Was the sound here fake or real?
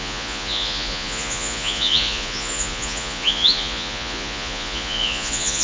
fake